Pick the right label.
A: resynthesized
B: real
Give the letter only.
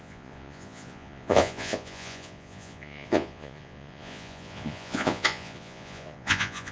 A